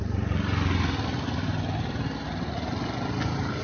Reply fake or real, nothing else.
real